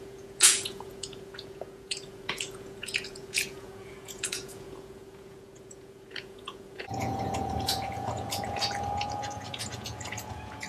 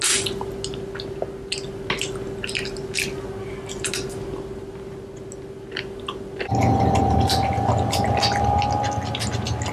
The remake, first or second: first